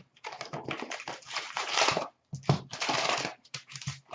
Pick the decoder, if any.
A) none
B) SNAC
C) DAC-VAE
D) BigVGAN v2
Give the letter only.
D